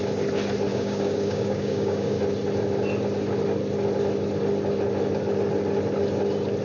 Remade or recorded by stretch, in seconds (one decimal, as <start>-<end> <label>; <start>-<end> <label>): 0.0-0.7 recorded; 0.7-2.2 remade; 2.2-6.6 recorded